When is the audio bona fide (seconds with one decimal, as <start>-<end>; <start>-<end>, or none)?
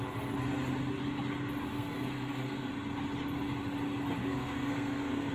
0.0-1.7; 2.7-4.2